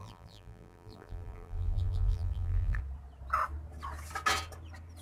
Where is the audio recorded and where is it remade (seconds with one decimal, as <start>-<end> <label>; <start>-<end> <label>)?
0.0-2.8 remade; 2.8-5.0 recorded